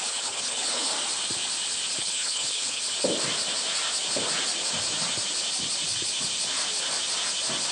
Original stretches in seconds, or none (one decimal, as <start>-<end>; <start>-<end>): 0.9-2.0; 2.8-7.7